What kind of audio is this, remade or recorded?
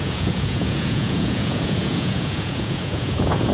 remade